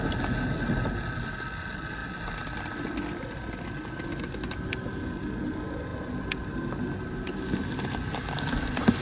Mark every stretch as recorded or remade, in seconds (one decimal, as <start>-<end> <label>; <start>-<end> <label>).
0.0-9.0 recorded